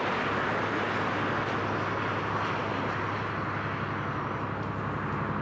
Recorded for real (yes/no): yes